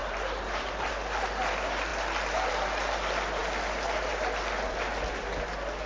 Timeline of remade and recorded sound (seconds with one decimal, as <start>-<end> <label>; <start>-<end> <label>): 0.0-0.9 remade; 0.9-5.9 recorded